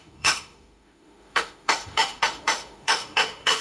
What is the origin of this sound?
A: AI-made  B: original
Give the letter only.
A